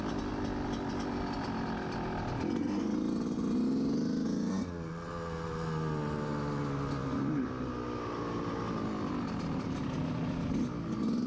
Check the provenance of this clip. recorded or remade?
recorded